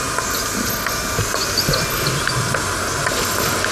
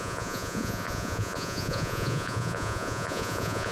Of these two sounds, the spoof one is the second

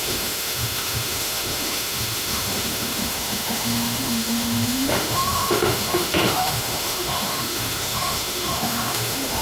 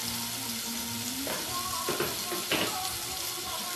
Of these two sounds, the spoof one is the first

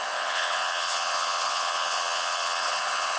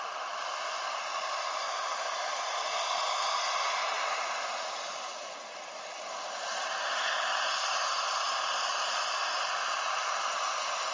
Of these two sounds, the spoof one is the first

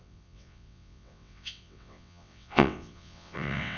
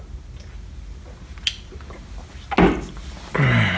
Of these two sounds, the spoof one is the first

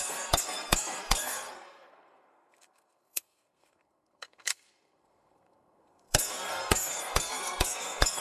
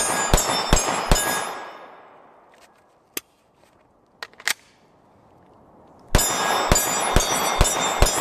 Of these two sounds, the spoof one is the first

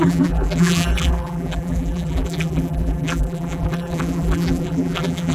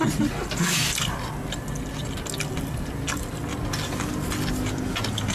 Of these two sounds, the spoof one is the first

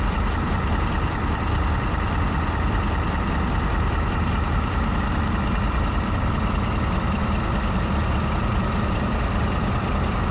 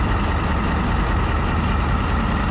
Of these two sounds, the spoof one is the first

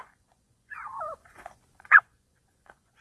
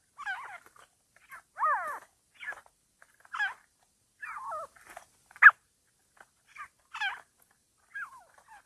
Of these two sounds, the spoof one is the first